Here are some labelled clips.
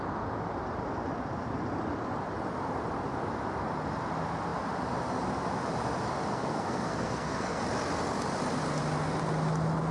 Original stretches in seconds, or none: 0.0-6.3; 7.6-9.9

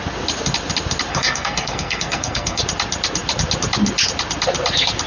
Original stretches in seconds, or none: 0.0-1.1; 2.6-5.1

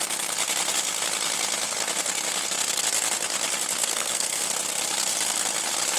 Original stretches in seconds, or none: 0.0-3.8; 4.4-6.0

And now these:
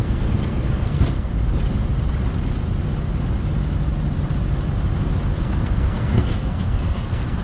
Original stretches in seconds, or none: 1.3-5.4